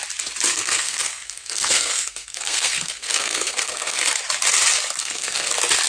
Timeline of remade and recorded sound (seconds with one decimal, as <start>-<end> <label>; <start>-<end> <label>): 0.0-0.5 recorded; 0.5-4.0 remade; 4.0-5.0 recorded; 5.0-5.5 remade; 5.5-5.9 recorded